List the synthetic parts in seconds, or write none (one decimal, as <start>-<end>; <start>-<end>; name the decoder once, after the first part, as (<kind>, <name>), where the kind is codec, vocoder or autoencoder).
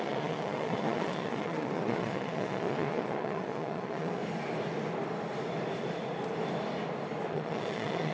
0.0-4.2 (vocoder, Vocos); 7.3-8.1